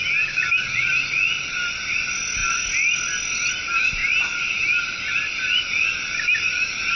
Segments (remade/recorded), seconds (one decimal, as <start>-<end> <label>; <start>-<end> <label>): 0.0-7.0 recorded